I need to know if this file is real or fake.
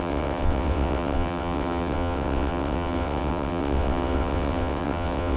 fake